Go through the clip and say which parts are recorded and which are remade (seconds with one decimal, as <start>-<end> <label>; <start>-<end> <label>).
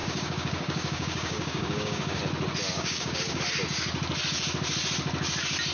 0.0-2.2 remade; 2.2-2.7 recorded; 2.7-3.4 remade; 3.4-5.7 recorded